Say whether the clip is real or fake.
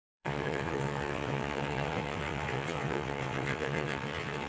fake